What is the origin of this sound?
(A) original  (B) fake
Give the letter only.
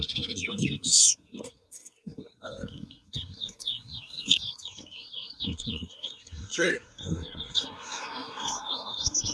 B